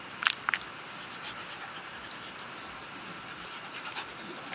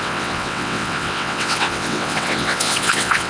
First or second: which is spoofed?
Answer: second